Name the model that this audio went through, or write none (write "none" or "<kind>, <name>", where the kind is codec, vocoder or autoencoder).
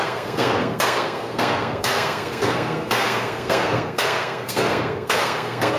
codec, SNAC